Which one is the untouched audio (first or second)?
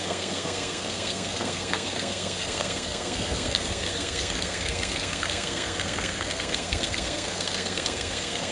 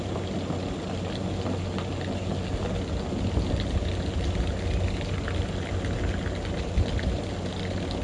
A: second